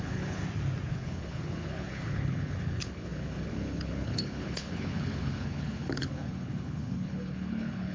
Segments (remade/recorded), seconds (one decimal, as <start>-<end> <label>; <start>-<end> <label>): 0.0-0.4 remade; 0.4-0.9 recorded; 0.9-7.9 remade